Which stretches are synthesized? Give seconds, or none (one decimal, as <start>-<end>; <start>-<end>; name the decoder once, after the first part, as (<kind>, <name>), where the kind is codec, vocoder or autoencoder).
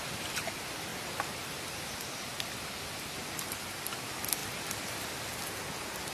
none